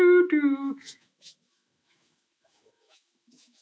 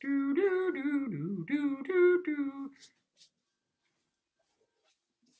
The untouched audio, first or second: second